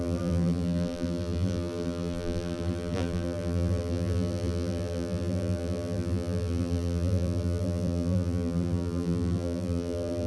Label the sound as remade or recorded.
remade